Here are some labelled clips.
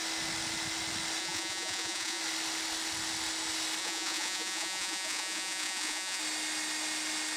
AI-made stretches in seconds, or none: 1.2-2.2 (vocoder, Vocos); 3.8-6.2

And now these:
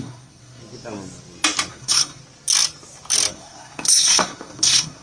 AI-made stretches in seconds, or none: 0.0-0.6 (codec, SNAC); 1.7-2.2; 3.3-5.0

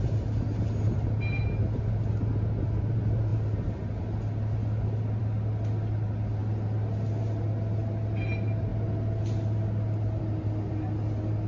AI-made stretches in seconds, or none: none

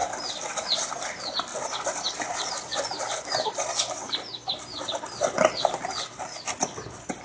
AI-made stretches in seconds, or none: none

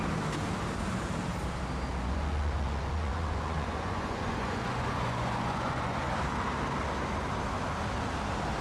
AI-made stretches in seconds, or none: 1.9-6.2 (vocoder, Vocos)

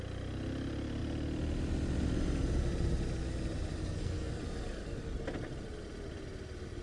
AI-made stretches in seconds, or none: 3.8-4.3 (codec, SNAC)